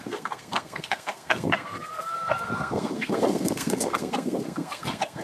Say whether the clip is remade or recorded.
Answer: remade